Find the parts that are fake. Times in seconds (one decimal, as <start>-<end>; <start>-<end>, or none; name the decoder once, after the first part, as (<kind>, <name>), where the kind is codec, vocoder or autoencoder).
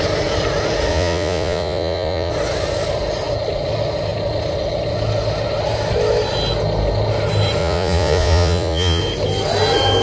0.9-2.3 (vocoder, Vocos); 7.6-9.0